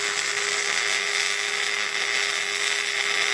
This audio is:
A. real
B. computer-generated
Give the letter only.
A